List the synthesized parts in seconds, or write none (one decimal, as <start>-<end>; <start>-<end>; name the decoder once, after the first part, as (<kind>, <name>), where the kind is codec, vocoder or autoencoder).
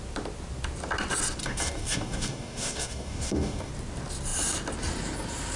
1.4-3.7 (codec, DAC)